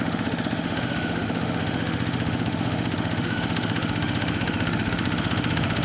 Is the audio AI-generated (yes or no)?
yes